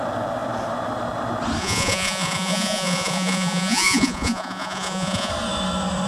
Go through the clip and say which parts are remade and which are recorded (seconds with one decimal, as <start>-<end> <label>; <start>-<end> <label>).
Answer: 0.0-1.6 recorded; 1.6-5.3 remade; 5.3-6.1 recorded